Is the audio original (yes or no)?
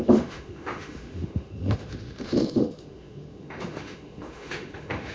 no